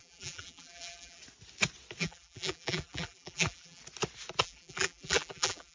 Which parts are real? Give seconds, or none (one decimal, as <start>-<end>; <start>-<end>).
1.2-2.0; 3.8-4.4